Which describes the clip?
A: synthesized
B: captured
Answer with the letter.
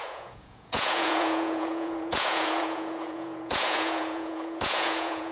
A